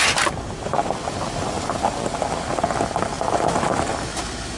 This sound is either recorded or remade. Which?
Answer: recorded